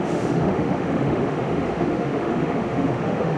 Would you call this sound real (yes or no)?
no